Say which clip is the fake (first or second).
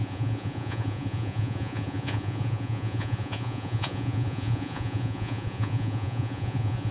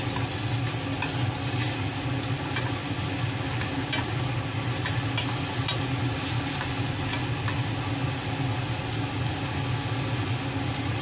first